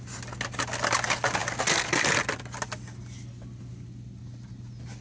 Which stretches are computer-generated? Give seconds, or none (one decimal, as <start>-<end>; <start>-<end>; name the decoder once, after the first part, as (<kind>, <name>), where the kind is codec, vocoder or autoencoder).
none